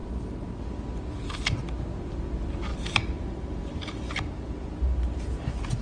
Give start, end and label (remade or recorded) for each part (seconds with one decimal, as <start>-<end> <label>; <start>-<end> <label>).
0.0-2.7 recorded; 2.7-4.7 remade; 4.7-5.8 recorded